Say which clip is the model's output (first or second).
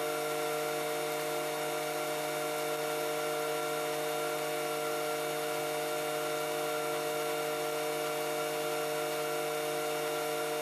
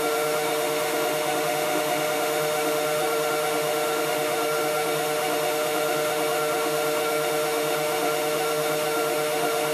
second